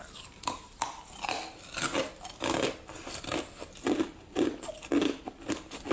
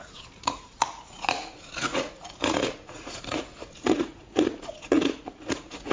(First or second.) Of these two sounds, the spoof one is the second